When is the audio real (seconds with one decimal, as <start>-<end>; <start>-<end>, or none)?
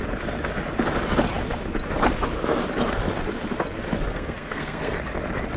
0.0-4.1; 5.0-5.6